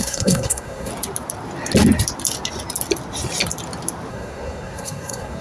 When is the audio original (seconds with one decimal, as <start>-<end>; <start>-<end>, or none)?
0.9-4.1